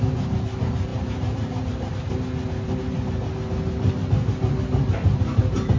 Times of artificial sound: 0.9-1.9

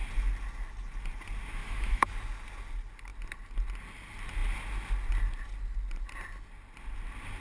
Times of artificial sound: 1.6-2.1

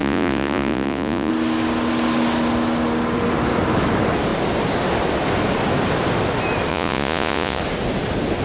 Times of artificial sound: 0.0-1.3; 6.7-7.6

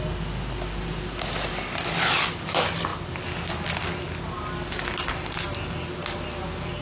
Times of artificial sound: none

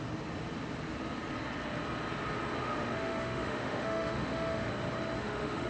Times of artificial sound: 2.6-4.7; 5.2-5.7

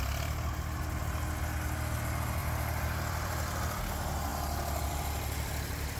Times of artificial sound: 2.4-3.8

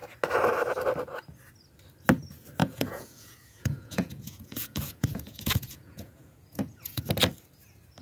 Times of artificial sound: 2.6-7.0